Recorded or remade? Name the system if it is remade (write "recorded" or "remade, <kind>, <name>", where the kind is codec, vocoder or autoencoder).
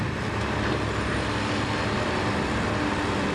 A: recorded